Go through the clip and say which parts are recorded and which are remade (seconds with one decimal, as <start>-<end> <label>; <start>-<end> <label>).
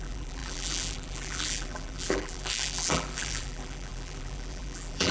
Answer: 0.0-5.1 remade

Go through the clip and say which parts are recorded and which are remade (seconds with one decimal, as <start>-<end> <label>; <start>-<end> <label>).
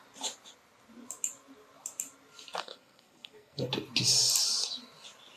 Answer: 0.0-2.6 recorded; 2.6-3.7 remade; 3.7-5.4 recorded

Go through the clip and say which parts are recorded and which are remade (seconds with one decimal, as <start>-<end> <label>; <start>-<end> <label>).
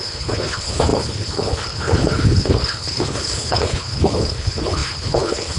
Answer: 0.0-5.6 remade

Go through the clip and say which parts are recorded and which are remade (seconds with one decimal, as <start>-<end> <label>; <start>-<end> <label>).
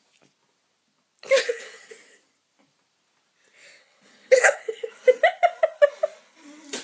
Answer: 0.0-1.4 recorded; 1.4-1.9 remade; 1.9-3.8 recorded; 3.8-4.9 remade; 4.9-6.8 recorded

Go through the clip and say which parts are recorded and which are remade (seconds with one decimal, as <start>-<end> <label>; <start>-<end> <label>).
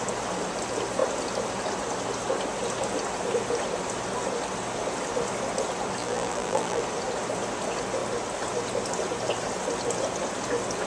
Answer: 0.0-6.0 recorded; 6.0-6.8 remade; 6.8-10.9 recorded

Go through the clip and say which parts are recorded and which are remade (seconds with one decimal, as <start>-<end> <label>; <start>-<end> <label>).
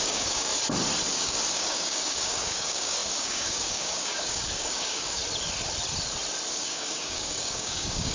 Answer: 0.0-0.5 remade; 0.5-1.1 recorded; 1.1-5.2 remade; 5.2-6.5 recorded; 6.5-8.1 remade